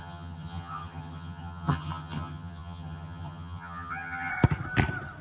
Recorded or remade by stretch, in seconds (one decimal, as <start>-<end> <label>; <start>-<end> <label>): 0.0-4.3 remade; 4.3-5.2 recorded